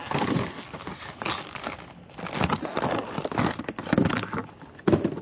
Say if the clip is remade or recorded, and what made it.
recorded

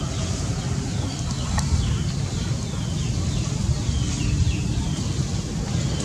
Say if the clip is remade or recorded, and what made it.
recorded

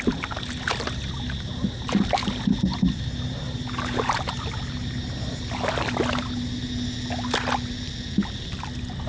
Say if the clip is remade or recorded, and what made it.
recorded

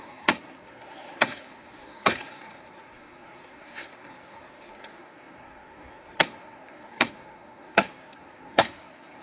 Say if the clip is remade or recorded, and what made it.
remade, codec, SNAC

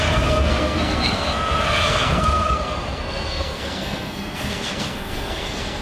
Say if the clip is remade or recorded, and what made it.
remade, codec, SNAC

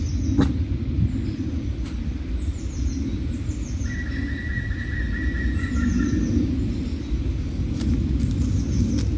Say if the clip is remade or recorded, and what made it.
recorded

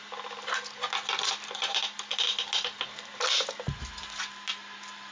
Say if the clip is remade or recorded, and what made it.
recorded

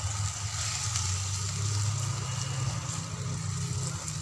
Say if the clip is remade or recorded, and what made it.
recorded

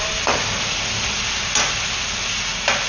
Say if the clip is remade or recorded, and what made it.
recorded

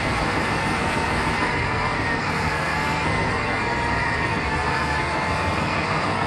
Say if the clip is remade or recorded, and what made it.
remade, codec, SNAC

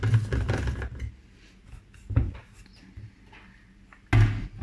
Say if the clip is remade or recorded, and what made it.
recorded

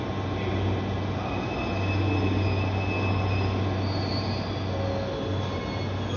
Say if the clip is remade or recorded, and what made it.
recorded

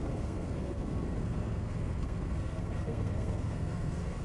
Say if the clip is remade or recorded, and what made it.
remade, codec, SNAC